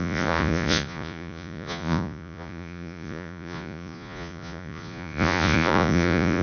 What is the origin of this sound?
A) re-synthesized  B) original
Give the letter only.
A